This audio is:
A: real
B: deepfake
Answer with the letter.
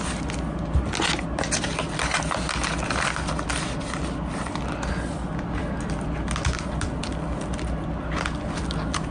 A